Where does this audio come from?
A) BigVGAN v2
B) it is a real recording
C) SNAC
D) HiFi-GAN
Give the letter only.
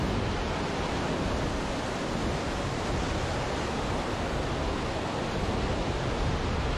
B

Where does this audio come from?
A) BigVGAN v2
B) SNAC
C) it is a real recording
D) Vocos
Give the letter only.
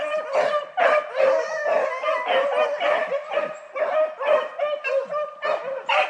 C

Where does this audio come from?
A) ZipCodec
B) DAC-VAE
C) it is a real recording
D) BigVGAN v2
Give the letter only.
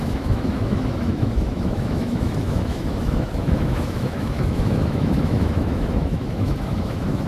B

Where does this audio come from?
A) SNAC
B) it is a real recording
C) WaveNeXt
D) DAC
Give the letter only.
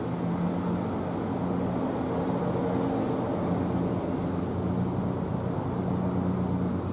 B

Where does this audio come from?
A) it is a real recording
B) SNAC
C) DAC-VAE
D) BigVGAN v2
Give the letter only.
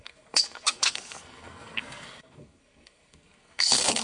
B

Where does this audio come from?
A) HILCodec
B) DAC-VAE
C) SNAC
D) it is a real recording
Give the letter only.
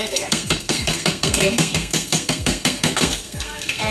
C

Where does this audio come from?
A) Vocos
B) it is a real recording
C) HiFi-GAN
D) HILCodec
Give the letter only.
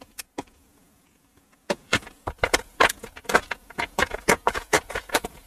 A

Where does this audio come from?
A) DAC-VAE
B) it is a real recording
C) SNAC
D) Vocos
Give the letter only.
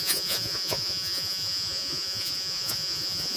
D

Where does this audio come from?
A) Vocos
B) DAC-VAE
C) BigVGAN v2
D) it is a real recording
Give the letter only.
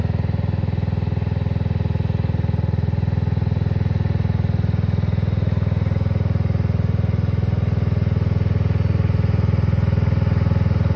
D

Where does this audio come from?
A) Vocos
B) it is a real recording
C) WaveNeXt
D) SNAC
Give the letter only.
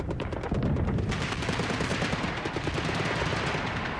B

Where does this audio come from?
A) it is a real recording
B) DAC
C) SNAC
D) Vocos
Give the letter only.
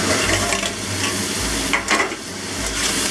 A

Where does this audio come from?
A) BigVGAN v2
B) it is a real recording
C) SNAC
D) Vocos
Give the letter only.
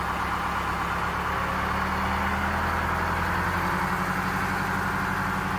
B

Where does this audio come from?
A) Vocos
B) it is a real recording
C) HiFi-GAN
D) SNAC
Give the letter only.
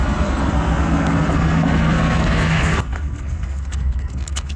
D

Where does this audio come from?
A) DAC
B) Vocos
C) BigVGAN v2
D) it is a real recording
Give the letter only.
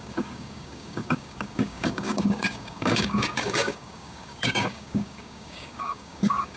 A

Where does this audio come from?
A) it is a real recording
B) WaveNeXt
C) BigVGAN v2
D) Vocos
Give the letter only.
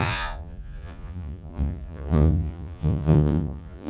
D